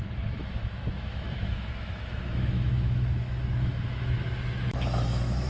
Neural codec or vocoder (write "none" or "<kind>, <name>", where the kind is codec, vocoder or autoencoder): autoencoder, DAC-VAE